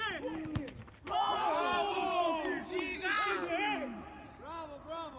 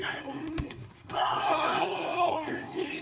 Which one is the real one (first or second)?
first